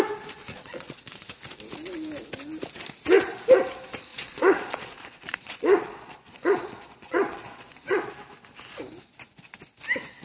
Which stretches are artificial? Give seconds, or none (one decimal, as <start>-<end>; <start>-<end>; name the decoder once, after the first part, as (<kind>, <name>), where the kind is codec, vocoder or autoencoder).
0.4-1.3 (vocoder, Vocos); 4.1-8.1

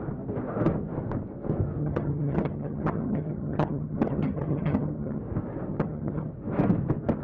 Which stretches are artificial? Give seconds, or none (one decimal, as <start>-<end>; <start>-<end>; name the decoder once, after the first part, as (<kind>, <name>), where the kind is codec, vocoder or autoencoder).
1.8-5.2 (vocoder, HiFi-GAN); 5.7-6.3

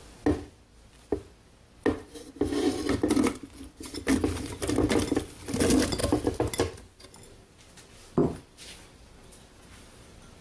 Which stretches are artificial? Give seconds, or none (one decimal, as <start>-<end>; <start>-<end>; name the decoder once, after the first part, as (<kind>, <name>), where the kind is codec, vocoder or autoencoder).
6.0-6.6 (vocoder, BigVGAN v2); 8.2-10.4

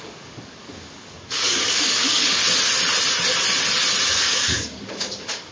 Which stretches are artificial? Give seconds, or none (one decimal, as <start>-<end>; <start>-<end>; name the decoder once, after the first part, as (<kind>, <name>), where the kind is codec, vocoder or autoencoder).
0.0-2.4 (codec, DAC); 4.1-5.5